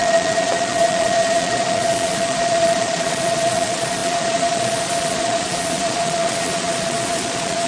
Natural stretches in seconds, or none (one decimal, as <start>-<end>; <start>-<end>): none